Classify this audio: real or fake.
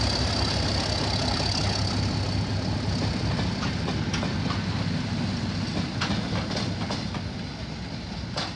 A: real